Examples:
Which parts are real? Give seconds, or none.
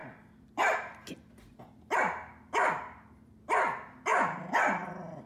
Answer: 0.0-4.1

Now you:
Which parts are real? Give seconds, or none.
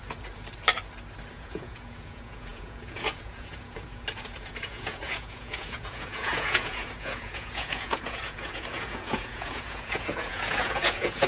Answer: 0.0-1.3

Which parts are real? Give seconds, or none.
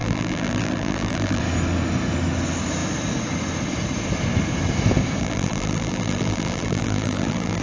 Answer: 1.4-5.2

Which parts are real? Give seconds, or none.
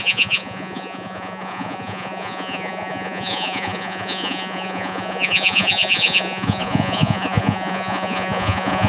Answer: none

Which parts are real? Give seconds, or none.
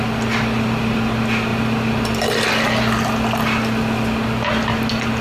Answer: 0.0-5.2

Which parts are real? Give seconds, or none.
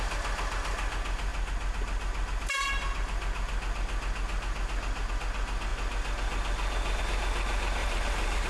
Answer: 0.0-7.8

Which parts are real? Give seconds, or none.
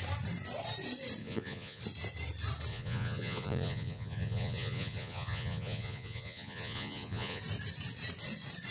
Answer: 0.0-1.2; 1.8-2.7; 7.4-8.7